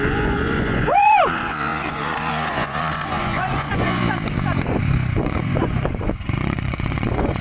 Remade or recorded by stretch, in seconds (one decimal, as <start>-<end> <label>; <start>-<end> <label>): 0.0-4.0 remade; 4.0-4.8 recorded; 4.8-7.4 remade